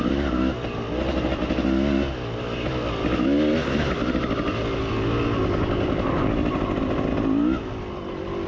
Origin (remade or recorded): recorded